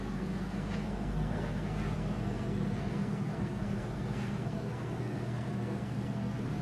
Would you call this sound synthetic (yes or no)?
yes